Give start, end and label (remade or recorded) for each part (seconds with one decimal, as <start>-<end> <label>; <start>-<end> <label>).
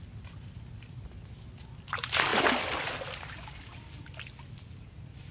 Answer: 0.0-5.3 recorded